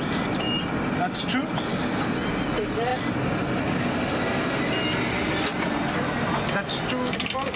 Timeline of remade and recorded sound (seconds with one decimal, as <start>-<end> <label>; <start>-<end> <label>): 0.0-7.6 recorded